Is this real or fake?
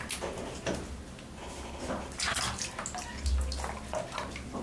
real